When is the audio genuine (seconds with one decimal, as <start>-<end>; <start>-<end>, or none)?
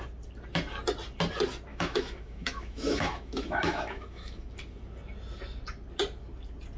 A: 0.0-1.7; 4.5-6.8